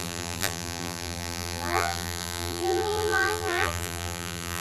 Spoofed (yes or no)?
yes